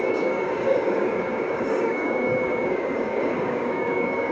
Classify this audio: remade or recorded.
remade